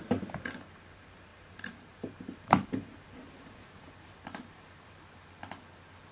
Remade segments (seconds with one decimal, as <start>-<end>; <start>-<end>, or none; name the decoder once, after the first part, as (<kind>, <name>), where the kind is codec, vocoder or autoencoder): 1.3-4.9 (vocoder, BigVGAN v2)